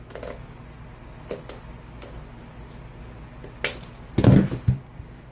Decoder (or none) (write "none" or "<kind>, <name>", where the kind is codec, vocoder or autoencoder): none